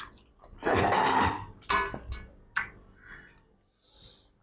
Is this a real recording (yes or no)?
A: yes